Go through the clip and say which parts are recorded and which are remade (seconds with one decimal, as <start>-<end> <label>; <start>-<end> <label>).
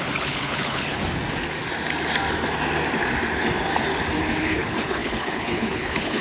0.0-1.0 remade; 1.0-4.4 recorded; 4.4-6.2 remade